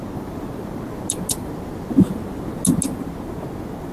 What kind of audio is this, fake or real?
real